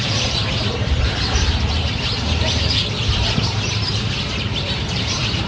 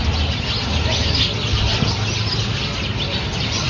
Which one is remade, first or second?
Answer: first